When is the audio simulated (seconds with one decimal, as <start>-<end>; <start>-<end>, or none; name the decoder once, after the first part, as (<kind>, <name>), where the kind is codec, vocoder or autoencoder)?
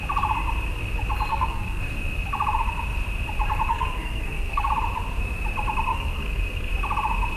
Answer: 1.3-1.8 (codec, SNAC); 3.7-4.7; 5.9-6.7